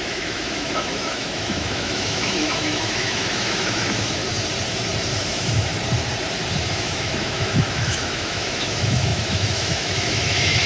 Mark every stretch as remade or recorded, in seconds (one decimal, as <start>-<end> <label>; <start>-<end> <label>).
0.0-4.2 remade; 4.2-5.3 recorded; 5.3-5.7 remade; 5.7-6.7 recorded; 6.7-10.7 remade